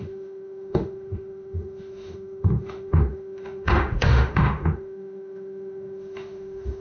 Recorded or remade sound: remade